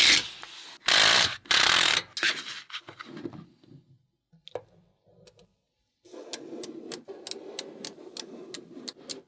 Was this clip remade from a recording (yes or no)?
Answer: no